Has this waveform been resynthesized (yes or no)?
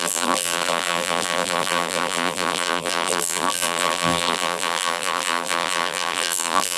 yes